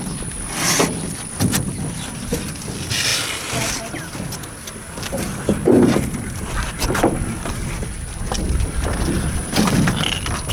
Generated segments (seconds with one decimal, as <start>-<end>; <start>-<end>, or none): none